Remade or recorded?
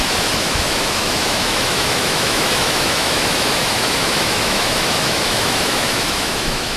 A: remade